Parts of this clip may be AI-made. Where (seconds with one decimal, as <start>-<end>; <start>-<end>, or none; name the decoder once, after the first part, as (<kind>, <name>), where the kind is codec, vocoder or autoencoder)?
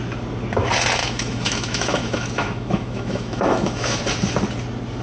1.0-4.0 (autoencoder, DAC-VAE)